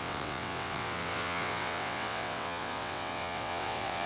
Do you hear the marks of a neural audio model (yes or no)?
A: yes